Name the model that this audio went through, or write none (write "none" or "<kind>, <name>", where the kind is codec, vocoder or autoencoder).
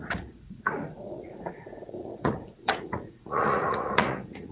vocoder, Vocos